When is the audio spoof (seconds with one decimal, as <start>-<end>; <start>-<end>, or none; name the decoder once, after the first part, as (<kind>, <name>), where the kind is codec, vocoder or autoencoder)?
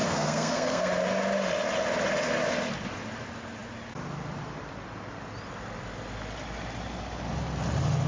0.0-0.9 (codec, SNAC)